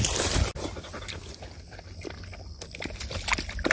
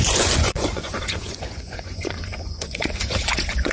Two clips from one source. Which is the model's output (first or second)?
second